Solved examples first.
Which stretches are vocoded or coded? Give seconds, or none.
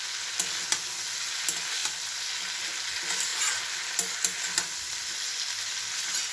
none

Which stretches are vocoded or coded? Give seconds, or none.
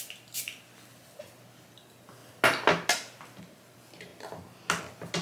none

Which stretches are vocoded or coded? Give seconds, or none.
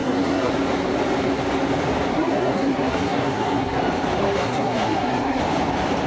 0.0-0.5 (codec, SNAC); 2.1-3.8; 4.2-5.4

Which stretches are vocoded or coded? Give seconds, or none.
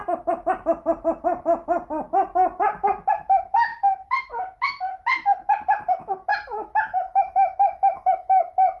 6.3-8.4 (autoencoder, DAC-VAE)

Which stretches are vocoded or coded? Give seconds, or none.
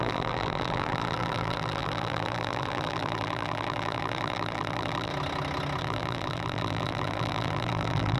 0.0-5.1 (vocoder, BigVGAN v2); 5.8-8.2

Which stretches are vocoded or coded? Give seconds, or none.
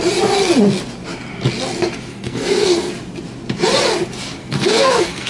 2.1-2.9 (codec, SNAC); 4.4-5.3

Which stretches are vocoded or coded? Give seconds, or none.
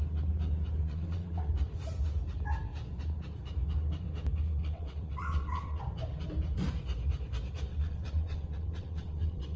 0.8-1.5 (vocoder, WaveNeXt); 4.6-5.8; 7.7-9.6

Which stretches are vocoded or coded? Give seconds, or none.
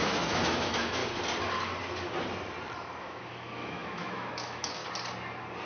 0.0-1.0 (autoencoder, DAC-VAE); 3.0-4.8